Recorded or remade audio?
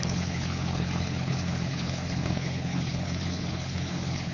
remade